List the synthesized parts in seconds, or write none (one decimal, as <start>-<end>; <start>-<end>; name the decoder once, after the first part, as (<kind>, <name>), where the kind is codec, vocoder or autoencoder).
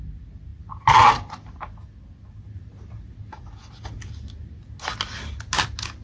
none